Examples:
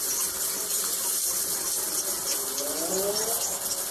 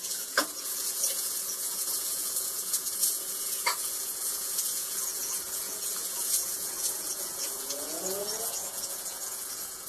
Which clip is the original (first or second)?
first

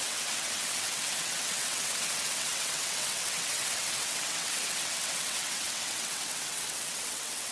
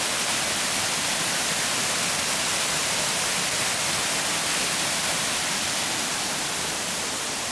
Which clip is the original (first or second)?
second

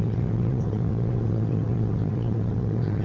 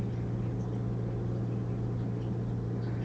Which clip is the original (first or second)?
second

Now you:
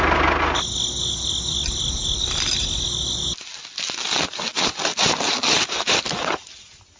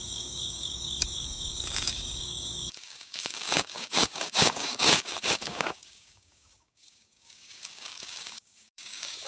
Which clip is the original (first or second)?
first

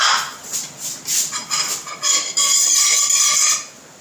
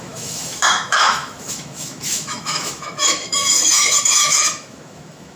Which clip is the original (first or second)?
first